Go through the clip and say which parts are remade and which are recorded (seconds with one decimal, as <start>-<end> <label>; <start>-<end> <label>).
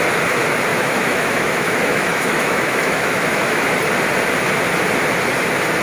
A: 0.0-0.7 recorded; 0.7-3.7 remade; 3.7-5.8 recorded